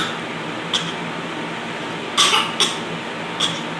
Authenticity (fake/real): real